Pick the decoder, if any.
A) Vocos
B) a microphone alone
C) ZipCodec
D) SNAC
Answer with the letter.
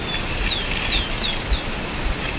B